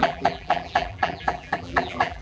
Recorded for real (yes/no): no